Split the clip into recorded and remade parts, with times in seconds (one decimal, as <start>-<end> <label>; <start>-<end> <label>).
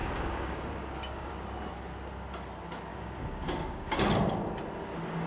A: 0.0-1.3 remade; 1.3-2.9 recorded; 2.9-4.0 remade; 4.0-5.3 recorded